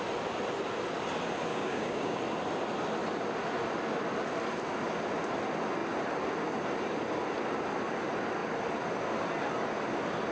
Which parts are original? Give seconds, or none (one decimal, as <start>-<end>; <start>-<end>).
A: 0.0-1.5; 2.2-10.3